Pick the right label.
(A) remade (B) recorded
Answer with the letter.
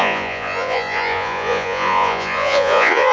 A